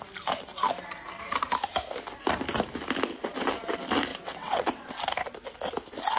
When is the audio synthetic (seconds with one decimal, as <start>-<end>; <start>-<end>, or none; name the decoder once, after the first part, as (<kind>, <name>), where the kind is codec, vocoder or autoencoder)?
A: 4.1-4.9 (vocoder, WaveNeXt)